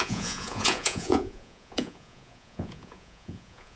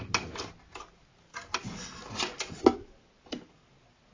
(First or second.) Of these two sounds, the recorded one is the second